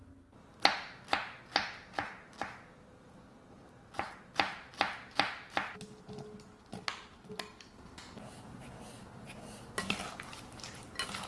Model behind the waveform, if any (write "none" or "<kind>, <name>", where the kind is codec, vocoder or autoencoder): none